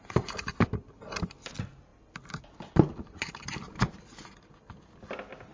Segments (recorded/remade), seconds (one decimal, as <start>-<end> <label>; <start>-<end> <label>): 0.0-5.5 recorded